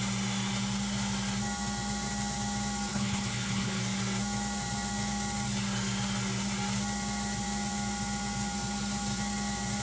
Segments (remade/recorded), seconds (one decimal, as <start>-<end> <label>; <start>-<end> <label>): 0.0-2.9 recorded; 2.9-3.8 remade; 3.8-9.8 recorded